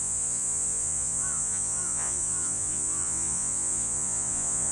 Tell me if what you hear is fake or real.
fake